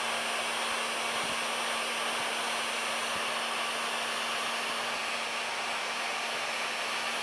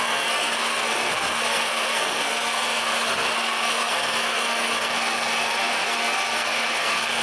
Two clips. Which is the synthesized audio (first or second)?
second